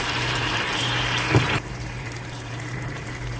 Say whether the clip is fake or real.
fake